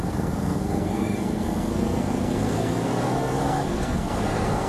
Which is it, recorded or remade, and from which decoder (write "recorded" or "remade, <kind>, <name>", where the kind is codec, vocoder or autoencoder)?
remade, codec, SNAC